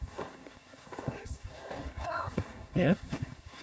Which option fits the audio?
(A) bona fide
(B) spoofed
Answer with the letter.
B